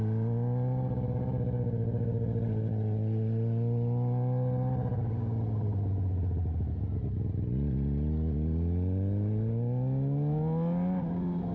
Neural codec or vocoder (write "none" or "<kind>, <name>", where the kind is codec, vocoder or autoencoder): none